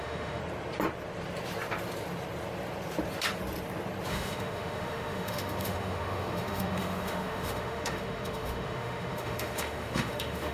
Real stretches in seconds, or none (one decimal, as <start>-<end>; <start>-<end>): 0.4-4.1